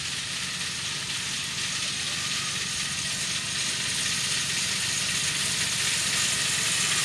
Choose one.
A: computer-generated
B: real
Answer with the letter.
B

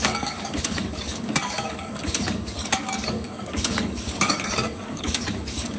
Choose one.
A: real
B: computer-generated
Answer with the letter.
B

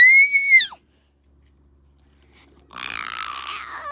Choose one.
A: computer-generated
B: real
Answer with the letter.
B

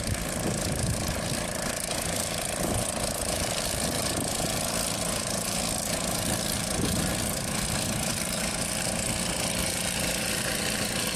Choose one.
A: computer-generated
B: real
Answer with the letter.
B